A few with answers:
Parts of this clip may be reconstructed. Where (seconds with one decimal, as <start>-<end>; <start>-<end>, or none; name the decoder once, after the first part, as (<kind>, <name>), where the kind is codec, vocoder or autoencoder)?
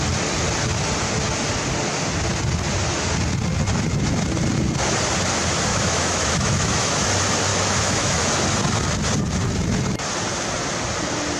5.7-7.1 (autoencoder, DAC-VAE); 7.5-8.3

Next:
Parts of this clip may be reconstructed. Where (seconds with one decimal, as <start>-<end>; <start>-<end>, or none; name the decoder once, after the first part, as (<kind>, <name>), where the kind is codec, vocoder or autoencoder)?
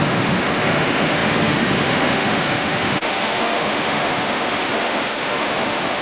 0.0-6.0 (autoencoder, DAC-VAE)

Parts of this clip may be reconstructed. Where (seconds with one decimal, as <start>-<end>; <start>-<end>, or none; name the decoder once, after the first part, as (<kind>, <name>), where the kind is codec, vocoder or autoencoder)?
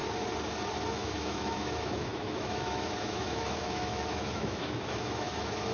1.0-5.7 (autoencoder, DAC-VAE)